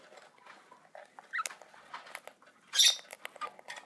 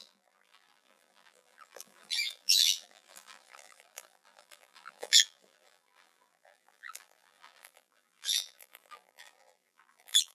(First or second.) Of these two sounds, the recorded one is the first